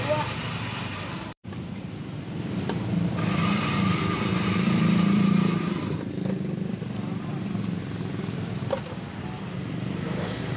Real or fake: fake